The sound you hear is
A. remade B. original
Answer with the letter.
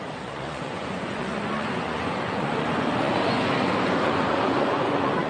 A